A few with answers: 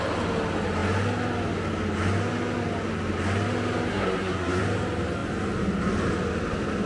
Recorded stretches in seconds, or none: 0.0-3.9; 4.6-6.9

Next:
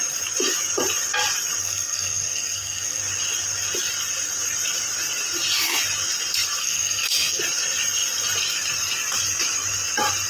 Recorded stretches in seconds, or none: 0.0-1.6; 3.0-6.6; 7.4-10.3

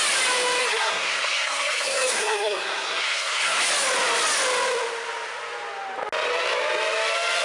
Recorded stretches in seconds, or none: 0.0-0.6; 3.6-7.4

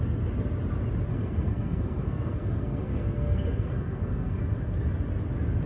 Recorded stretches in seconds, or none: 0.0-1.1; 4.4-5.7

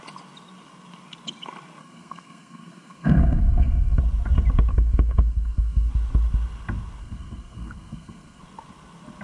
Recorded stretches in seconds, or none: 0.0-1.8; 4.0-4.7; 5.9-7.0; 8.4-9.2

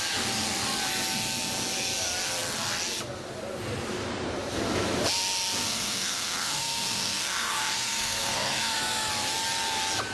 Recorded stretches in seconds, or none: 0.0-5.6; 9.1-10.1

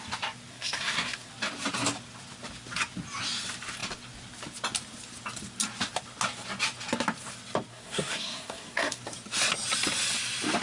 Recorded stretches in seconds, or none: 0.0-0.5; 1.3-7.7; 9.0-10.6

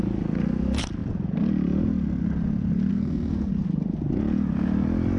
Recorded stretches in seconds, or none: 0.0-2.9; 3.5-5.2